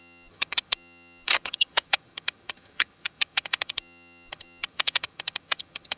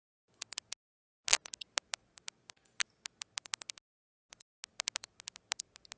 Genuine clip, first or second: second